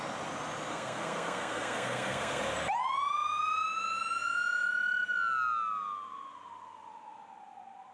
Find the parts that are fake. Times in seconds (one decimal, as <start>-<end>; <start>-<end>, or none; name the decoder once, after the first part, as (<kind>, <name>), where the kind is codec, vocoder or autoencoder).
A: 0.7-2.4 (codec, SNAC)